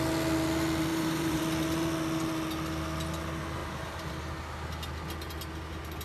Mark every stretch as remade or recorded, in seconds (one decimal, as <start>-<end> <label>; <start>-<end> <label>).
0.0-0.9 recorded; 0.9-1.4 remade; 1.4-3.6 recorded; 3.6-4.1 remade; 4.1-6.0 recorded